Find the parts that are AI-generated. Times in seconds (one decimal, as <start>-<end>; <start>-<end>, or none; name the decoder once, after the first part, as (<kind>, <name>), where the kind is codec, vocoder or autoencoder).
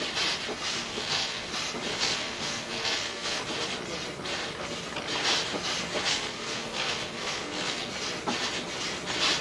0.8-1.5 (codec, SNAC); 1.9-3.4; 6.1-7.9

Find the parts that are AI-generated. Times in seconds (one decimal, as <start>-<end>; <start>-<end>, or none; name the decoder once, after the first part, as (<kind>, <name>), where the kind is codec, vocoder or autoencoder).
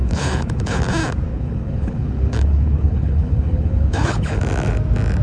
0.0-0.9 (codec, HILCodec); 1.3-4.4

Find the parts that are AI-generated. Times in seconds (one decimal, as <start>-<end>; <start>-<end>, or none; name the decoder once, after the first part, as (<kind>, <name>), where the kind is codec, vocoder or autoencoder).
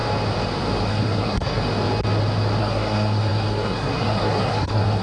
0.9-1.6 (codec, SNAC); 2.6-5.0